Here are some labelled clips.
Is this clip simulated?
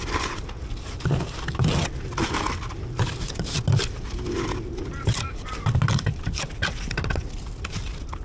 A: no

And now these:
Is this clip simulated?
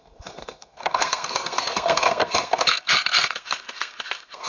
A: yes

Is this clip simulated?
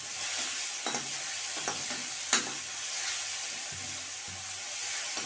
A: no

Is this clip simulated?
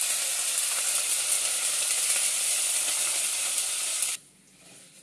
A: no